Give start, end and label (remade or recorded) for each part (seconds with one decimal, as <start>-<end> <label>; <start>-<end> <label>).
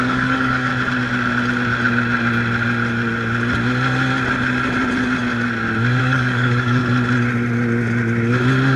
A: 0.0-0.7 remade; 0.7-6.0 recorded; 6.0-6.8 remade; 6.8-8.8 recorded